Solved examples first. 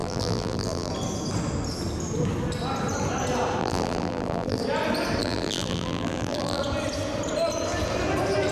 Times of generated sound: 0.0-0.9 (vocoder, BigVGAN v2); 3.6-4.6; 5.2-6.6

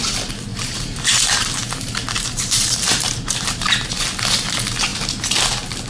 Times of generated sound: 0.5-4.0 (vocoder, BigVGAN v2)

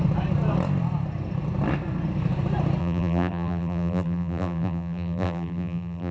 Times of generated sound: 2.8-6.1 (vocoder, BigVGAN v2)

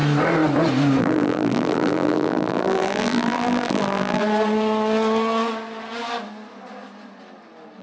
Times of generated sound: 1.0-4.2 (vocoder, BigVGAN v2)

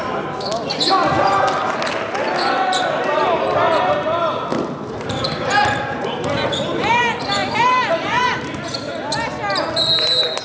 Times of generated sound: 4.5-7.0 (vocoder, BigVGAN v2); 7.4-8.2